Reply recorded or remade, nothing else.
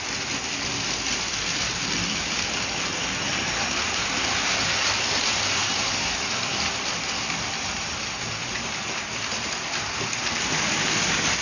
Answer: recorded